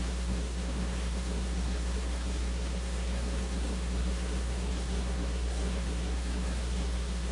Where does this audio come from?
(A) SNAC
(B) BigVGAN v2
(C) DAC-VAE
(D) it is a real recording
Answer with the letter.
A